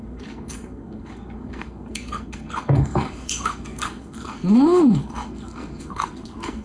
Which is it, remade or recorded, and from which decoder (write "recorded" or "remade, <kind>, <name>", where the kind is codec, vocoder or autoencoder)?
remade, codec, SNAC